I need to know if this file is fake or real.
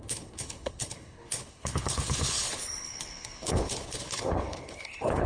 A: fake